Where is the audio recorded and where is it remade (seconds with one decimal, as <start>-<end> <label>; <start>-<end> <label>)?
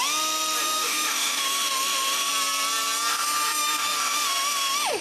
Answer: 0.0-0.6 recorded; 0.6-2.3 remade; 2.3-3.1 recorded; 3.1-5.0 remade